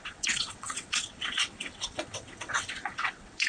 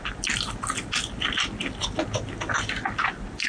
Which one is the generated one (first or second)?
first